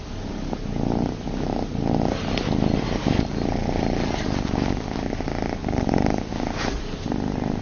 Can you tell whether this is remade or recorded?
recorded